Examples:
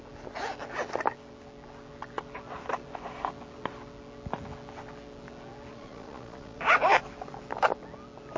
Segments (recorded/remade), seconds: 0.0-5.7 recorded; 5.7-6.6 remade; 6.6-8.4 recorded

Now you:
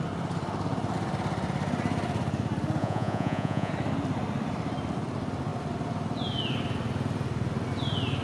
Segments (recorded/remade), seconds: 0.0-2.8 recorded; 2.8-3.7 remade; 3.7-8.2 recorded

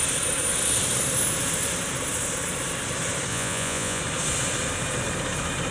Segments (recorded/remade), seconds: 0.0-3.3 recorded; 3.3-4.0 remade; 4.0-5.7 recorded

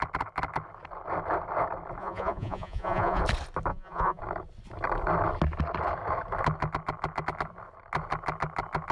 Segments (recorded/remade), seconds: 0.0-2.0 recorded; 2.0-3.2 remade; 3.2-3.7 recorded; 3.7-4.2 remade; 4.2-8.9 recorded

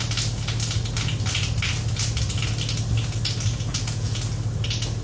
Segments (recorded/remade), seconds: 0.0-3.7 recorded; 3.7-4.2 remade; 4.2-5.0 recorded